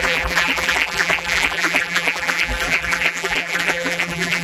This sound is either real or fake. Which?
fake